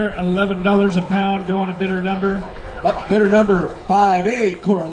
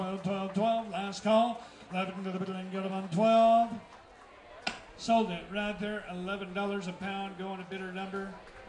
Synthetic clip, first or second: first